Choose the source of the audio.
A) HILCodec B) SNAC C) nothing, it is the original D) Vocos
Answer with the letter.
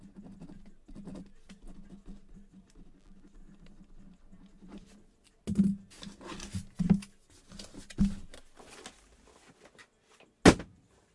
C